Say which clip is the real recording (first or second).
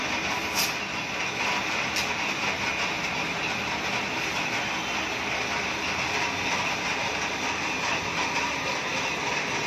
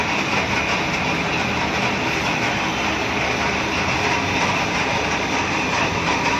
first